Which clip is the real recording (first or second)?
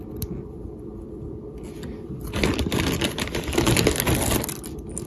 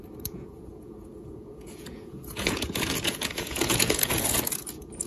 first